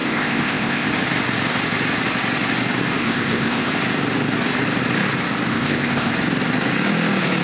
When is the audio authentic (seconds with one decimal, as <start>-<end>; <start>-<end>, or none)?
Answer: 0.9-3.0; 3.7-5.5; 6.1-7.4